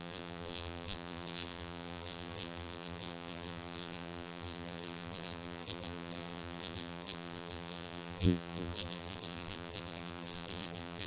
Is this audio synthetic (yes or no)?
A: yes